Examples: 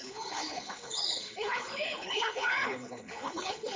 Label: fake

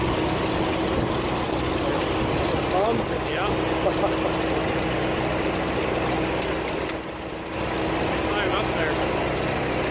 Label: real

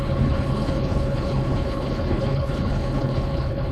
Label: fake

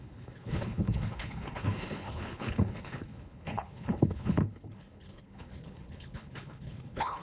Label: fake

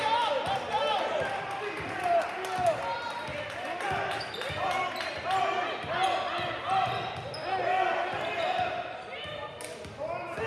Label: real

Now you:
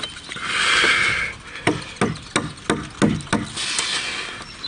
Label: real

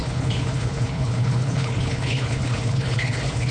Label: fake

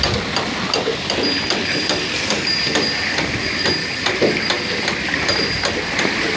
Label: real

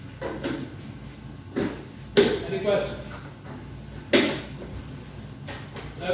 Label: real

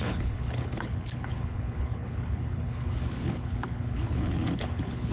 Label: fake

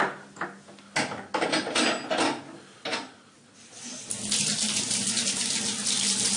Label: real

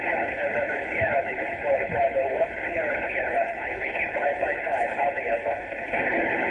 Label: fake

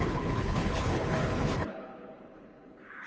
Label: fake